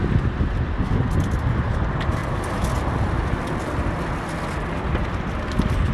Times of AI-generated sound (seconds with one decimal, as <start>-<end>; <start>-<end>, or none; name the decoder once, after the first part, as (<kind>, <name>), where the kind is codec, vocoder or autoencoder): none